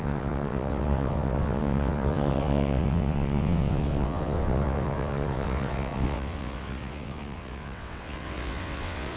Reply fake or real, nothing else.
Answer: fake